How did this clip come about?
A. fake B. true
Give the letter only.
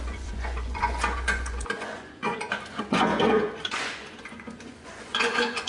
A